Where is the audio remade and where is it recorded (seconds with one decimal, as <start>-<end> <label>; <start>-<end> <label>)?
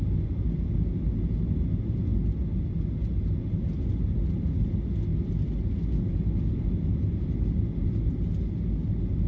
0.0-9.3 recorded